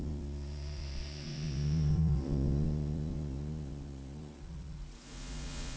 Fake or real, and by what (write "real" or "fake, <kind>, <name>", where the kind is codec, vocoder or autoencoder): fake, vocoder, Vocos